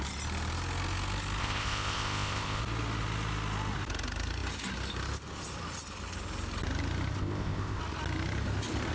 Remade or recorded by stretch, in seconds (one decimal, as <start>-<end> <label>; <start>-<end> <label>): 0.0-1.4 recorded; 1.4-2.6 remade; 2.6-7.2 recorded; 7.2-7.8 remade; 7.8-8.9 recorded